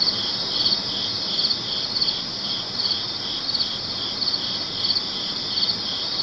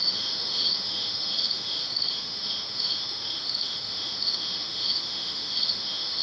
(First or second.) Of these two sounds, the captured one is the first